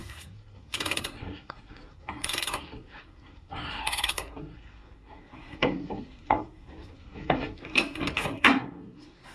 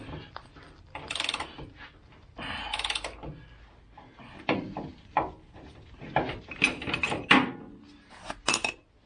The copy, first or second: first